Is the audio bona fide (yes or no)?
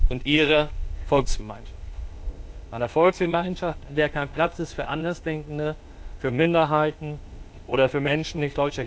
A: no